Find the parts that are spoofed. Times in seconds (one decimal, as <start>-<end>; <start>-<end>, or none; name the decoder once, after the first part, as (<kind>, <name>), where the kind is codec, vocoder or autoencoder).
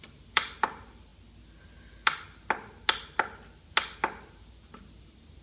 0.0-1.1 (vocoder, BigVGAN v2); 4.3-5.4